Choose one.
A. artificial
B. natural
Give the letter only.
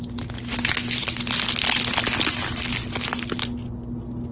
B